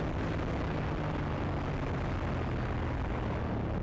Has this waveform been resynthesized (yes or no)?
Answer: no